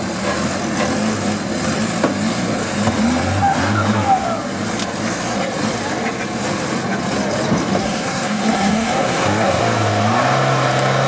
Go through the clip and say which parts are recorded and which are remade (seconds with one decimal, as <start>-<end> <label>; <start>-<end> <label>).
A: 0.0-7.8 recorded; 7.8-9.6 remade; 9.6-11.1 recorded